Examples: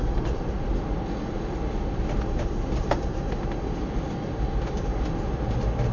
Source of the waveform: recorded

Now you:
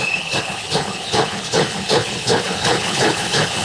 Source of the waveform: remade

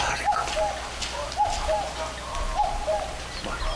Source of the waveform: recorded